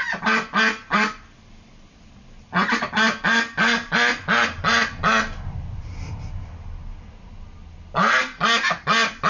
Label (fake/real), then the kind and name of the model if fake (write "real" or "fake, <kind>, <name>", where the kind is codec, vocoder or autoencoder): real